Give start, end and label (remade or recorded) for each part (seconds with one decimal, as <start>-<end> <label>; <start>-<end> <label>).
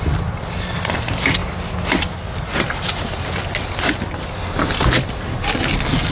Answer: 0.0-6.1 recorded